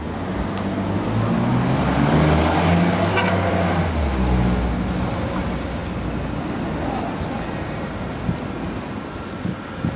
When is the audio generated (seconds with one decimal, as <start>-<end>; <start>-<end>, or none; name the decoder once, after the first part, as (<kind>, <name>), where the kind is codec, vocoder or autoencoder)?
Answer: 1.5-3.5 (codec, DAC)